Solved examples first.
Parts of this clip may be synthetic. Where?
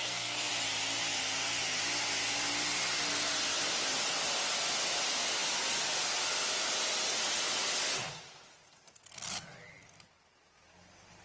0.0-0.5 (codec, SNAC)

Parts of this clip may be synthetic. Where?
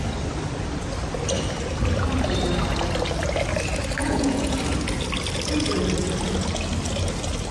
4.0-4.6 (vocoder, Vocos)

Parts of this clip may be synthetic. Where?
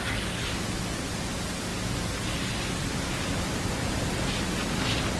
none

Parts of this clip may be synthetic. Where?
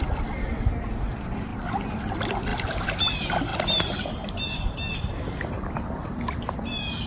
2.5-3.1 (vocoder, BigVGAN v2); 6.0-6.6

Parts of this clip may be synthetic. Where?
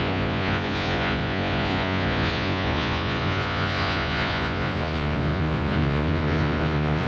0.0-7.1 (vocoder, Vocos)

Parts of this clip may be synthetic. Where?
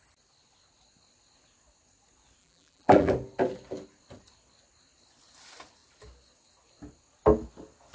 2.4-3.1 (vocoder, BigVGAN v2)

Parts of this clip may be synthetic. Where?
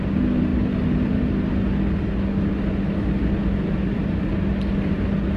0.5-1.5 (vocoder, BigVGAN v2); 3.2-4.9